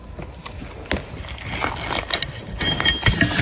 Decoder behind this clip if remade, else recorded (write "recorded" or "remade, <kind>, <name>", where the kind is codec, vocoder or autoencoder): recorded